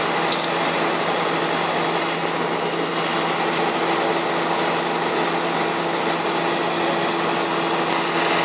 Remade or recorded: recorded